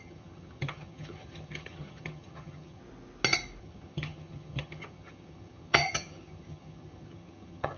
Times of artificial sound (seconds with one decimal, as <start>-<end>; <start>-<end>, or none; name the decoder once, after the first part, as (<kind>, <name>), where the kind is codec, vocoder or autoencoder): 0.0-2.8 (vocoder, HiFi-GAN); 3.6-7.8

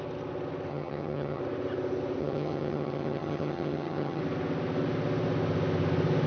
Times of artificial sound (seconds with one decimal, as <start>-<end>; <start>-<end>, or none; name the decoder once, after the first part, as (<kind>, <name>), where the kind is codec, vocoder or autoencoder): 0.7-1.4 (vocoder, HiFi-GAN); 2.2-4.2